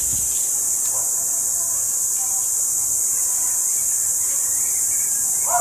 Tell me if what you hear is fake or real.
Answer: real